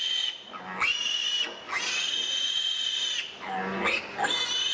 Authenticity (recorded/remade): recorded